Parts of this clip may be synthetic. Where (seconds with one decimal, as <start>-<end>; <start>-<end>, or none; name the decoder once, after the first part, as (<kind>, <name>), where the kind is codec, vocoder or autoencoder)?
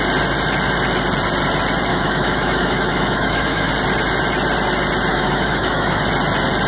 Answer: 1.9-3.7 (autoencoder, DAC-VAE); 5.1-6.0